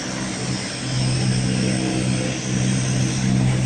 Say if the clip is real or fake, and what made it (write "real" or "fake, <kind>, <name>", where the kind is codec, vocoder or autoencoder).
real